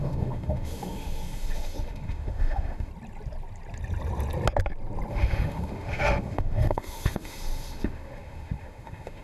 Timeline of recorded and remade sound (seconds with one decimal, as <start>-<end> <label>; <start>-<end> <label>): 0.0-2.9 remade; 2.9-5.1 recorded; 5.1-9.2 remade